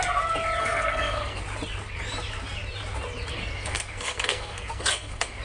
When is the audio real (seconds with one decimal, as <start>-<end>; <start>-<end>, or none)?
0.0-0.6; 1.4-3.3